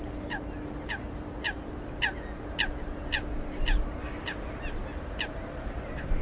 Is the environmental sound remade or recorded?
recorded